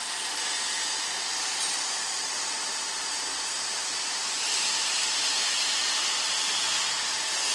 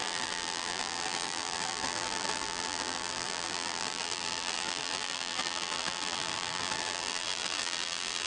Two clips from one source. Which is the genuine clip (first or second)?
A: first